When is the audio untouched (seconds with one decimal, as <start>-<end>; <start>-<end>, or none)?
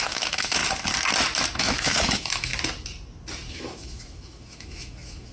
0.6-1.6; 2.5-3.5